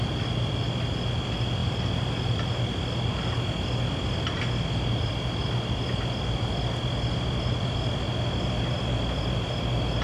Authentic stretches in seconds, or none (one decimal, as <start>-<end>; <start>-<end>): 0.0-10.0